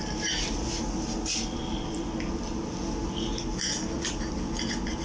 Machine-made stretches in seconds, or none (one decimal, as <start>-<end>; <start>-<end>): none